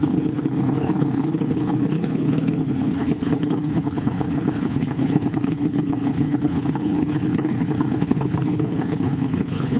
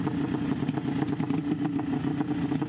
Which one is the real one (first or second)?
second